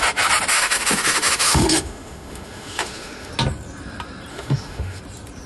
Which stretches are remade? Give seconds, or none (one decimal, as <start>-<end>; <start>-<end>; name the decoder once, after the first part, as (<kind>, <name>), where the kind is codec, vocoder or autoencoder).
0.5-3.3 (autoencoder, DAC-VAE); 4.3-5.0